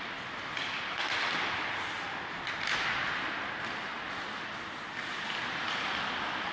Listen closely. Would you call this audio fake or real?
real